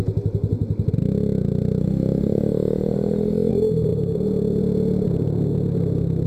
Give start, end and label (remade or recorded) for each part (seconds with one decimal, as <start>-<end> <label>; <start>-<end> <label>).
0.0-1.8 recorded; 1.8-3.5 remade; 3.5-6.3 recorded